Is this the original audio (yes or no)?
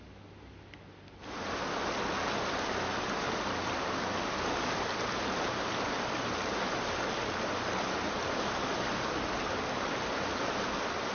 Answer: yes